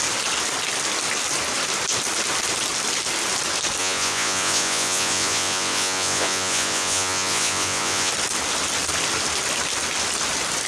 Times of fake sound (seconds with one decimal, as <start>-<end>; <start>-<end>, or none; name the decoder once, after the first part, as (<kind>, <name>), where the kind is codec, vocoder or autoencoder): 3.8-8.1 (vocoder, Vocos)